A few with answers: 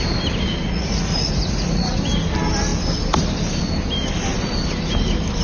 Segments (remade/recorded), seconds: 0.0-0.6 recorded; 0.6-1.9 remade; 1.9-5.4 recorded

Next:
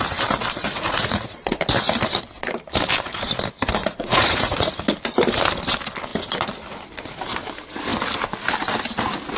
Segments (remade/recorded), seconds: 0.0-0.6 recorded; 0.6-1.6 remade; 1.6-3.8 recorded; 3.8-4.7 remade; 4.7-9.4 recorded

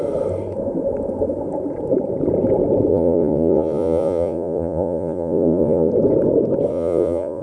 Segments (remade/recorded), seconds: 0.0-2.9 recorded; 2.9-5.9 remade; 5.9-6.7 recorded; 6.7-7.4 remade

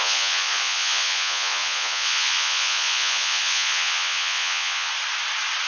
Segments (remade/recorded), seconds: 0.0-4.9 remade; 4.9-5.7 recorded

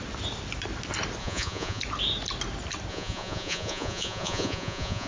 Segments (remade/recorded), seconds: 0.0-1.2 recorded; 1.2-1.8 remade; 1.8-2.9 recorded; 2.9-5.1 remade